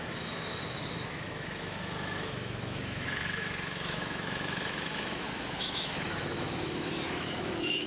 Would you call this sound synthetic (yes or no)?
yes